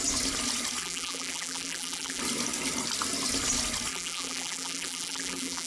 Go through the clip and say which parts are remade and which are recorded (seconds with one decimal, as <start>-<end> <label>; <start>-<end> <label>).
0.0-0.8 recorded; 0.8-2.2 remade; 2.2-3.9 recorded; 3.9-5.7 remade